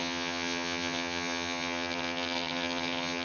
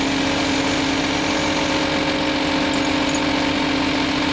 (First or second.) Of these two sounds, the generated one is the first